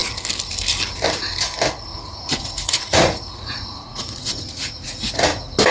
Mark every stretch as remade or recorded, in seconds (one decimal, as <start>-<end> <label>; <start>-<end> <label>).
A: 0.0-1.9 recorded; 1.9-5.3 remade; 5.3-5.7 recorded

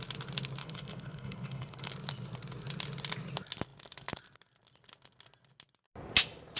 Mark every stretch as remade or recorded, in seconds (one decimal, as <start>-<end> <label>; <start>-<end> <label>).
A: 0.0-0.6 recorded; 0.6-1.9 remade; 1.9-6.6 recorded

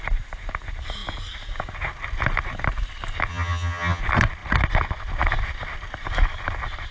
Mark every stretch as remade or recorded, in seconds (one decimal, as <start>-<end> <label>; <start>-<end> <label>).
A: 0.0-3.3 recorded; 3.3-4.0 remade; 4.0-6.9 recorded

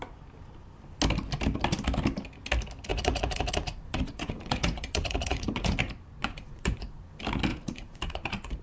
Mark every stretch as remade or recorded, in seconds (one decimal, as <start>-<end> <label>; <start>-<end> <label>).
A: 0.0-2.9 recorded; 2.9-5.8 remade; 5.8-6.2 recorded; 6.2-7.0 remade; 7.0-7.5 recorded; 7.5-8.6 remade

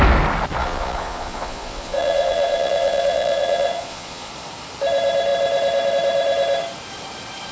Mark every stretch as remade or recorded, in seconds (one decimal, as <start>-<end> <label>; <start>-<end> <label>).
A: 0.0-0.6 recorded; 0.6-4.3 remade; 4.3-7.5 recorded

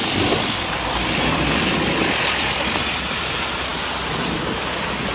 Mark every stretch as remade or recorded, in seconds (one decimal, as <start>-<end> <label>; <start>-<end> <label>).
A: 0.0-3.1 remade; 3.1-5.1 recorded

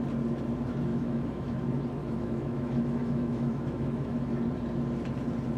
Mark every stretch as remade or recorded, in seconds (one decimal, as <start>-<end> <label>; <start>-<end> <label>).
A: 0.0-0.9 recorded; 0.9-1.6 remade; 1.6-2.0 recorded; 2.0-4.3 remade; 4.3-5.6 recorded

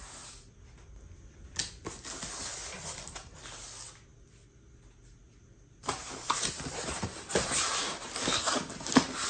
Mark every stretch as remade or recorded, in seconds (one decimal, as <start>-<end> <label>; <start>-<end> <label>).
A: 0.0-9.3 recorded